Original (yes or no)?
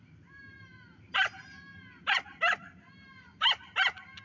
yes